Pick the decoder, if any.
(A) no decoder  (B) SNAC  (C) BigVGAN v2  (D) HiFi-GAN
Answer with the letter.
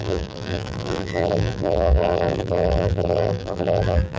C